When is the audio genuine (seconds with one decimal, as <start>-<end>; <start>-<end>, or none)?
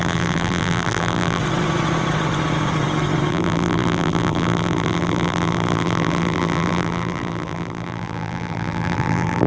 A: 1.4-3.3